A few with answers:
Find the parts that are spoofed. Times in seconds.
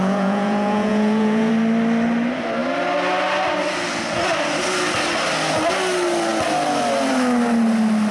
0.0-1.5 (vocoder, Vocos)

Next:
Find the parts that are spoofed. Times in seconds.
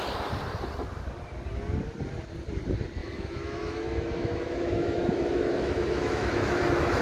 3.0-7.0 (autoencoder, DAC-VAE)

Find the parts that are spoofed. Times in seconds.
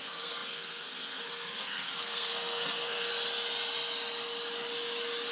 0.0-3.1 (codec, SNAC)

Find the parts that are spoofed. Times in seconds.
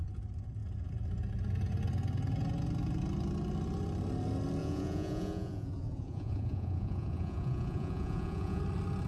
4.6-8.6 (vocoder, Vocos)